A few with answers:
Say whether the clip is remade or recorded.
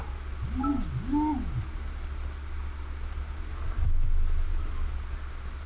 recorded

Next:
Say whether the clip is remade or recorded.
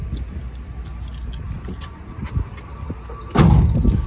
recorded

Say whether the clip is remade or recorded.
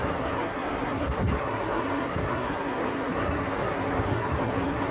remade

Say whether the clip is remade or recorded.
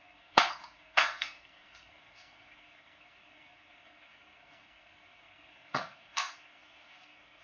remade